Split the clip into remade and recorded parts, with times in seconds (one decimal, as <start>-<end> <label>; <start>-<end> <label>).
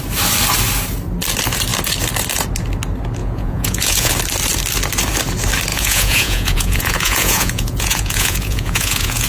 0.0-3.2 recorded; 3.2-4.1 remade; 4.1-5.7 recorded; 5.7-9.3 remade